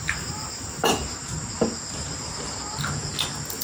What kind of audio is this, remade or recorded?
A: recorded